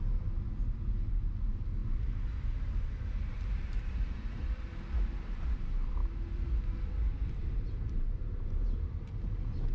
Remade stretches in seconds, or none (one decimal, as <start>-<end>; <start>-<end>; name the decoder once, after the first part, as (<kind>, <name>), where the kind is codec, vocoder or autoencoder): 0.0-9.7 (vocoder, BigVGAN v2)